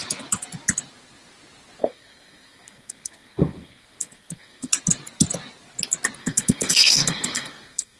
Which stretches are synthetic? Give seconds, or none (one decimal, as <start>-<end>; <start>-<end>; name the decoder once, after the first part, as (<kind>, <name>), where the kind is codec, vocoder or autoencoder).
1.8-4.7 (codec, SNAC); 6.2-8.0